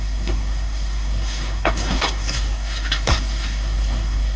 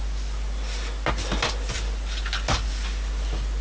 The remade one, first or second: first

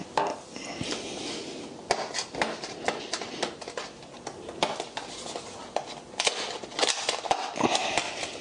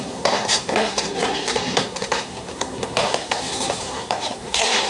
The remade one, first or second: second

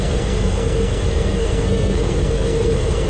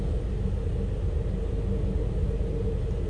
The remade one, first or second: first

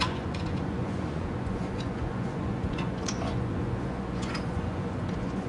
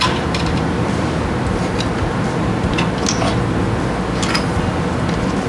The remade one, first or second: first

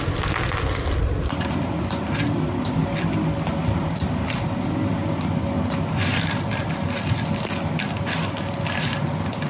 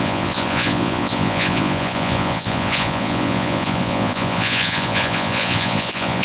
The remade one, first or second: second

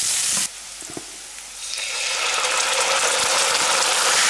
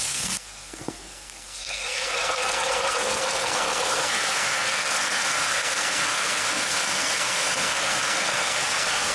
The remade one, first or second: second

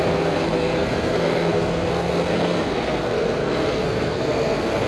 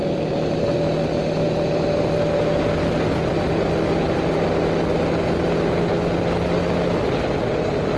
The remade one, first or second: first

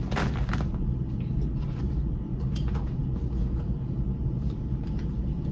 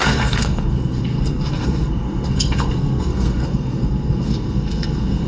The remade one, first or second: second